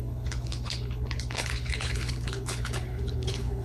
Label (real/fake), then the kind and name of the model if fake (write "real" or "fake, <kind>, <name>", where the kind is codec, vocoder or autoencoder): fake, codec, HILCodec